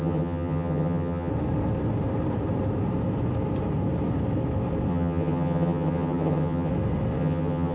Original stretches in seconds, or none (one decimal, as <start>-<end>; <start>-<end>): 1.3-4.9; 6.7-7.2